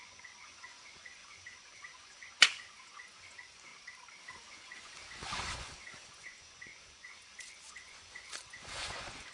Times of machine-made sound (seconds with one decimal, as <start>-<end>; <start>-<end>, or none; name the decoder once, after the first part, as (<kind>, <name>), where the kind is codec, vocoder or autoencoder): 0.0-3.7 (vocoder, Vocos); 4.5-9.3